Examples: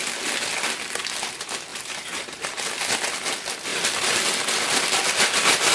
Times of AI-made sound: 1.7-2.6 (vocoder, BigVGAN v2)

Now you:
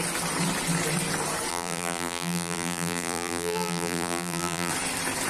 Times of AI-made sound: 1.5-4.7 (vocoder, BigVGAN v2)